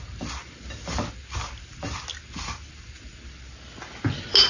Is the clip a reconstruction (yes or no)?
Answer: no